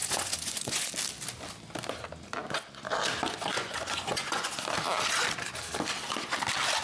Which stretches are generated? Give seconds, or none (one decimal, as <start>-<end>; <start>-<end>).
0.0-0.9; 3.5-4.5